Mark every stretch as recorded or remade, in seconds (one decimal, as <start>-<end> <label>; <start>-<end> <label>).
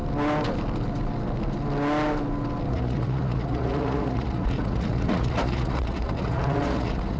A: 0.0-2.7 recorded; 2.7-7.2 remade